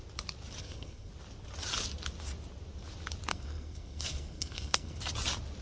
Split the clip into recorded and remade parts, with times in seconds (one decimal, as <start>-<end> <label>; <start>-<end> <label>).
0.0-0.6 recorded; 0.6-1.1 remade; 1.1-3.3 recorded; 3.3-5.0 remade; 5.0-5.6 recorded